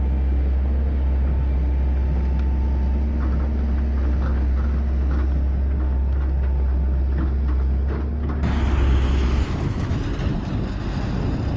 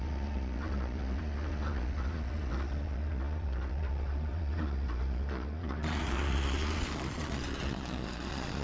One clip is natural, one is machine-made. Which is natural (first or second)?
first